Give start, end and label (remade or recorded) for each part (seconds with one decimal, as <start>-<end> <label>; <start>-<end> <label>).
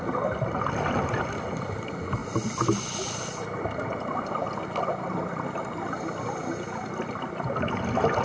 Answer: 0.0-8.2 recorded